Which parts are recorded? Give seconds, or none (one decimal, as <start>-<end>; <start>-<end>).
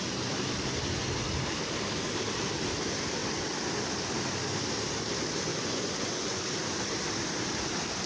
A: 0.0-5.5; 6.4-8.1